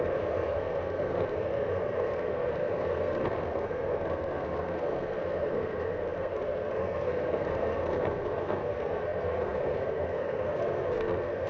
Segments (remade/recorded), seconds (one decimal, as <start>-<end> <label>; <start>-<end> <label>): 0.0-11.5 remade